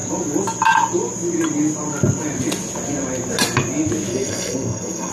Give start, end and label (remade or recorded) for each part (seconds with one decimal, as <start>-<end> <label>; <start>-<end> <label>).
0.0-4.1 recorded; 4.1-5.1 remade